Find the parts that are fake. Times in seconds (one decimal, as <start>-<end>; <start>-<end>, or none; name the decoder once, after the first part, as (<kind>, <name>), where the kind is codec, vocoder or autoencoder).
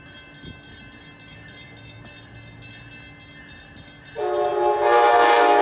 none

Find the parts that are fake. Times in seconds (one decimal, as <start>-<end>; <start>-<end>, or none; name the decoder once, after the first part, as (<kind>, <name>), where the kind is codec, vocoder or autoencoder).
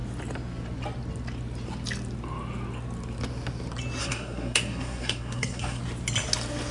4.0-5.8 (codec, SNAC)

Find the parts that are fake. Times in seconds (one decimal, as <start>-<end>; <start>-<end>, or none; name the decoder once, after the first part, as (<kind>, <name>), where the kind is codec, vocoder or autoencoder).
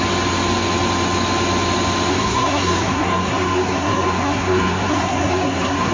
2.1-5.9 (codec, SNAC)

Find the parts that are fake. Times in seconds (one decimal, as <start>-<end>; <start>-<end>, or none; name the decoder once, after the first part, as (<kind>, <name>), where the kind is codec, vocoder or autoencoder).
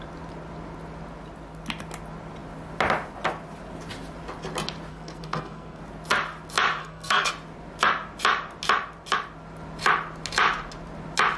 4.9-5.8 (codec, SNAC); 6.8-7.3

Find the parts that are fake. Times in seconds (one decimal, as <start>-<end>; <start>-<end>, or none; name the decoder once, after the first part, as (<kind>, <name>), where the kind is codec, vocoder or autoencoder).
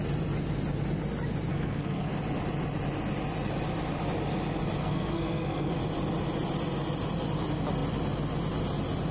1.5-2.1 (codec, SNAC); 4.8-5.8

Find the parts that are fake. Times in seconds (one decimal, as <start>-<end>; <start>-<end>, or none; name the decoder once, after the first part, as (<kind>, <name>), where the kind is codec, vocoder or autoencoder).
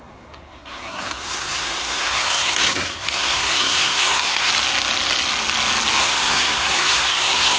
0.0-4.5 (codec, SNAC); 6.0-7.6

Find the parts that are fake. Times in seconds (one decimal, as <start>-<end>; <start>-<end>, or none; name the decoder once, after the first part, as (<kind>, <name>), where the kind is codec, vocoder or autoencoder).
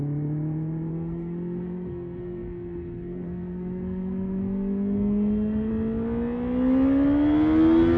0.9-5.7 (codec, SNAC)